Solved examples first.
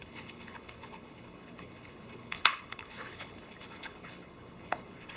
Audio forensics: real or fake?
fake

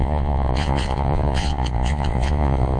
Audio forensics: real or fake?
fake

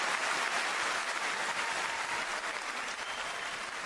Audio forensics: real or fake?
real